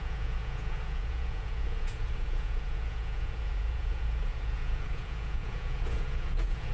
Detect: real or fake fake